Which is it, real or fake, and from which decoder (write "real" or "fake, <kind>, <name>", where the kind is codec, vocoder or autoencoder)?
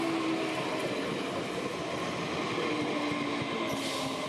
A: real